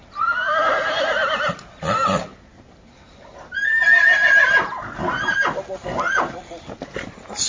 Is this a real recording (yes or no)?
yes